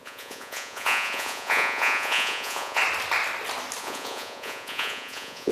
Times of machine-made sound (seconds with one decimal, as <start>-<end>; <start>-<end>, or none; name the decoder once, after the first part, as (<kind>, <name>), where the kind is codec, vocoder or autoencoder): 0.0-2.8 (vocoder, Vocos); 3.8-5.5